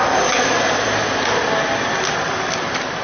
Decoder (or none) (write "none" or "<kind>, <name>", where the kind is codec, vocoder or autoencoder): none